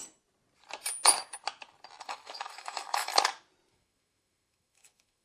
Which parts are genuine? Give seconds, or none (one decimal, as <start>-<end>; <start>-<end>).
0.0-2.0; 3.1-3.7